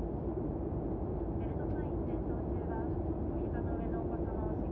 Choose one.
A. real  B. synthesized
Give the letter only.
A